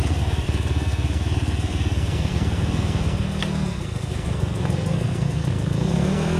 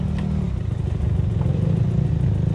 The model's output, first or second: first